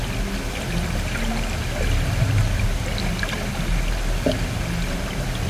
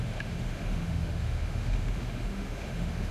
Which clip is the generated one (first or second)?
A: second